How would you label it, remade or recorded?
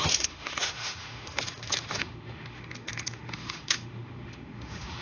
remade